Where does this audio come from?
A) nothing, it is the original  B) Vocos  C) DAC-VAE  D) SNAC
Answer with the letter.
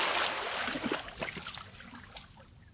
A